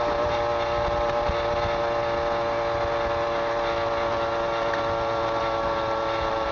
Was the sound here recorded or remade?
recorded